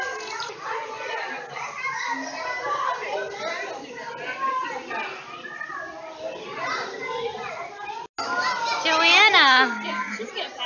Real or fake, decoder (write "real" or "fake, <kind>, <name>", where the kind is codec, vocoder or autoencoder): real